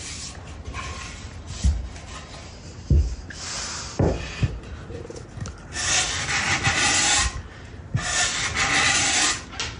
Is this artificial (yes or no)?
no